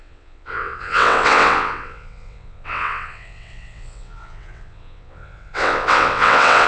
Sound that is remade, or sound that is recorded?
remade